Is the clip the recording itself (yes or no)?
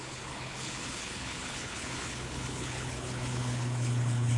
no